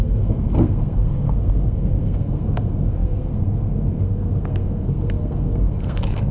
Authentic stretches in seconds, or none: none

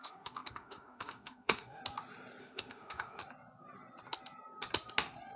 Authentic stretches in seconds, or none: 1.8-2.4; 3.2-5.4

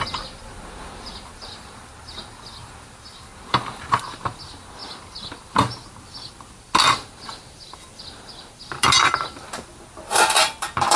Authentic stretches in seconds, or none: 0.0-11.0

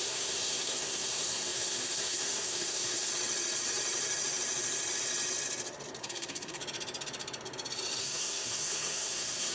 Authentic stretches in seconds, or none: 3.1-6.0; 6.6-8.0

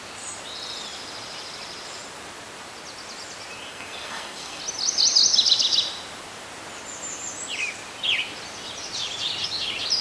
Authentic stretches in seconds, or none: 0.0-3.7; 4.6-10.0

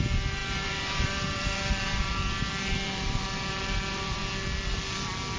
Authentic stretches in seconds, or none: 4.2-5.4